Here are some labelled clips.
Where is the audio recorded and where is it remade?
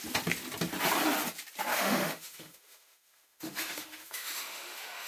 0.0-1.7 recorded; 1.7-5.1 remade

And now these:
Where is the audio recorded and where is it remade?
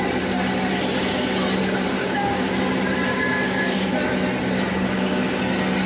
0.0-1.9 recorded; 1.9-2.5 remade; 2.5-3.1 recorded; 3.1-3.9 remade; 3.9-4.7 recorded; 4.7-5.4 remade; 5.4-5.9 recorded